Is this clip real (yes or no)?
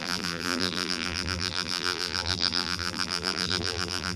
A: no